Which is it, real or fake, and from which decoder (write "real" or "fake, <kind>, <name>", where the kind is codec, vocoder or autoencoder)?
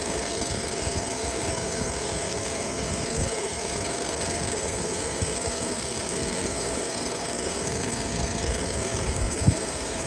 fake, codec, SNAC